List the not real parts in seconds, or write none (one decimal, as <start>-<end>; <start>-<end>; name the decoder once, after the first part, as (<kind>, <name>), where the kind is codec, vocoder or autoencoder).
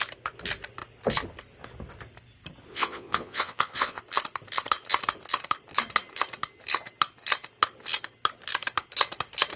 2.7-4.0 (vocoder, Vocos)